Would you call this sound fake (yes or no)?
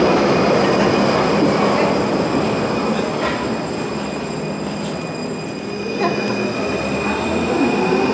no